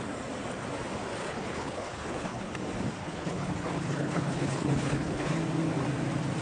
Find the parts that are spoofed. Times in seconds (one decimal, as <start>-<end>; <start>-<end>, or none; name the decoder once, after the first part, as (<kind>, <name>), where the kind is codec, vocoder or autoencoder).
1.2-2.5 (codec, HILCodec); 3.0-5.3